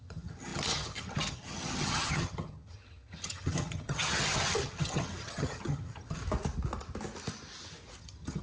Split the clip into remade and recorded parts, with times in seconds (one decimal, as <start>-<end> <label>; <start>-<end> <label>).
0.0-6.2 remade; 6.2-8.0 recorded; 8.0-8.4 remade